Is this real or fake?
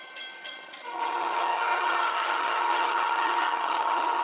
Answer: fake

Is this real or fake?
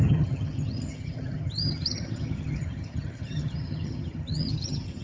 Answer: fake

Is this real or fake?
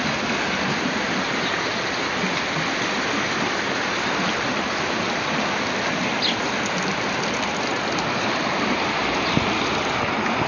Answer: real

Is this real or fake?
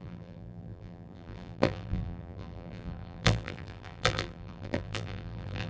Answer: fake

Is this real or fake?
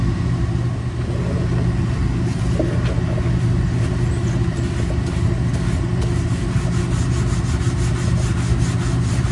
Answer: real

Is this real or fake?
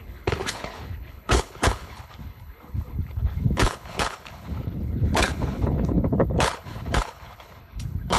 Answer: fake